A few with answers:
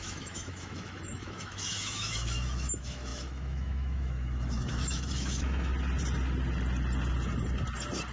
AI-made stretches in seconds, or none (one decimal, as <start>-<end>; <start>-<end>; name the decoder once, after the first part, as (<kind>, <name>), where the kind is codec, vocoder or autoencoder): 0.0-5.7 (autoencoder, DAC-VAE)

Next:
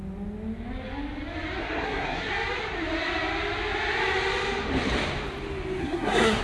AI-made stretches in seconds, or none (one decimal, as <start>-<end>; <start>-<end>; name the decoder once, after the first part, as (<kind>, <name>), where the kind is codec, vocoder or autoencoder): 1.6-2.3 (codec, SNAC); 5.8-6.4

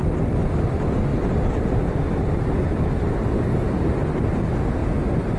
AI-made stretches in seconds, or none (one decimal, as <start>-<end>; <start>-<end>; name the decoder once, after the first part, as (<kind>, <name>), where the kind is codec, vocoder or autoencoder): none

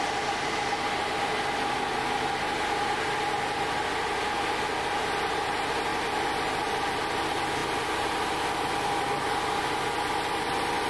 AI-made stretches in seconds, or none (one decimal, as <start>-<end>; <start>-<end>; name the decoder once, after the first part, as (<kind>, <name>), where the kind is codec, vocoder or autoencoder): none

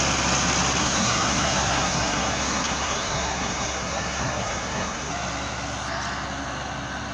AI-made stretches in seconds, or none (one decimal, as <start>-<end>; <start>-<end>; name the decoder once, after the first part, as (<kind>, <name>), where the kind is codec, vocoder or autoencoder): 0.8-5.1 (codec, SNAC)

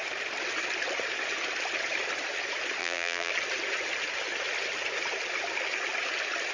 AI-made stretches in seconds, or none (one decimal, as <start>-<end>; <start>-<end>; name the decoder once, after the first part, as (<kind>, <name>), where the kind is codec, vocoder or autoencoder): 2.8-3.3 (vocoder, BigVGAN v2)

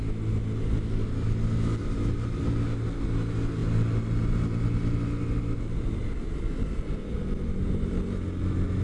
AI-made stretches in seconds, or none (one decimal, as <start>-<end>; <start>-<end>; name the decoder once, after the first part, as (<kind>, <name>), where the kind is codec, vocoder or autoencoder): 1.8-2.4 (vocoder, BigVGAN v2)

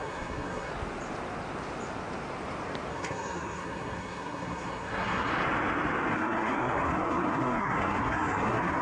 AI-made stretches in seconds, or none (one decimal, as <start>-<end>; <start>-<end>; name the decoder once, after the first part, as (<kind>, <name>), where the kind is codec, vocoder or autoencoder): 0.0-0.7 (codec, SNAC); 2.9-5.3; 6.1-8.8